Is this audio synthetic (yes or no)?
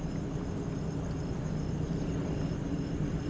no